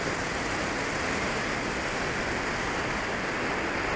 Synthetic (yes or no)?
no